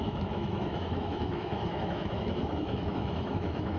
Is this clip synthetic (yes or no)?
yes